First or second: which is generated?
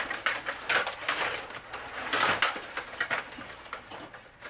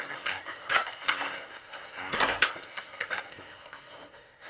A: second